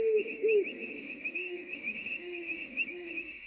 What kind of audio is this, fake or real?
fake